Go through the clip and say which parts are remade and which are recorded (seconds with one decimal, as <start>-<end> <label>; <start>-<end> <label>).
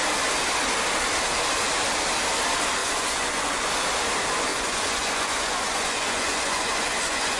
0.0-2.8 recorded; 2.8-3.7 remade; 3.7-4.5 recorded; 4.5-7.4 remade